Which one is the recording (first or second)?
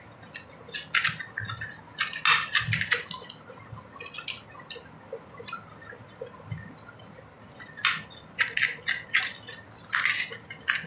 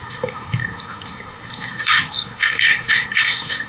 first